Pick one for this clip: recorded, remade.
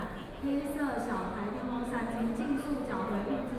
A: recorded